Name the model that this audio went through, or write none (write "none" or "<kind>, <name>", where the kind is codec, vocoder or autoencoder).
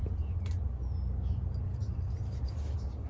none